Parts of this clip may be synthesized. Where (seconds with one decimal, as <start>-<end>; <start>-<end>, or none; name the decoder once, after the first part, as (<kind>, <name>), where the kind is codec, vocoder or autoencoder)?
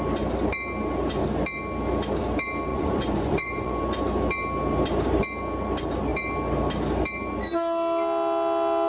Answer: 2.7-3.8 (vocoder, Vocos)